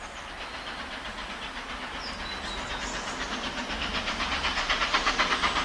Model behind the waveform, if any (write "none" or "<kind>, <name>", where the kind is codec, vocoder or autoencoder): none